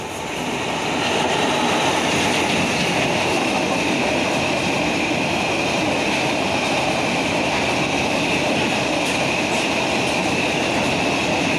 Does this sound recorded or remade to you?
recorded